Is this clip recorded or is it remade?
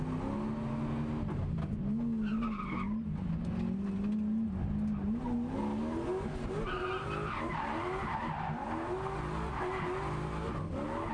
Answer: recorded